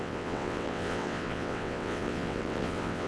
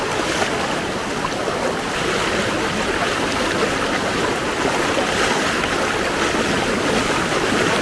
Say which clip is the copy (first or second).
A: first